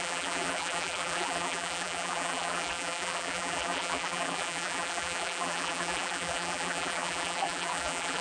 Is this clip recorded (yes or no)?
no